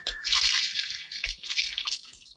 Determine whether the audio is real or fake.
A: fake